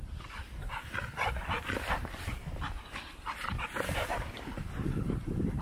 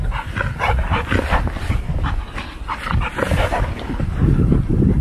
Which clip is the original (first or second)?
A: second